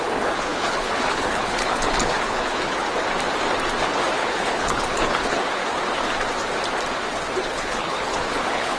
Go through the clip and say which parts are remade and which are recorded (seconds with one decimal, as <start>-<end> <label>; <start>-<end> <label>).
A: 0.0-2.8 remade; 2.8-4.1 recorded; 4.1-5.6 remade; 5.6-7.5 recorded; 7.5-8.8 remade